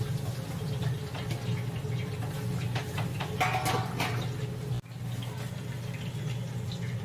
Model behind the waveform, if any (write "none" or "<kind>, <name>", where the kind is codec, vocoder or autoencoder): none